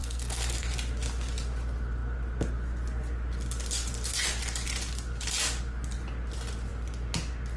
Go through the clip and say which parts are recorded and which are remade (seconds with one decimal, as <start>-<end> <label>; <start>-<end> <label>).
0.0-0.7 remade; 0.7-7.6 recorded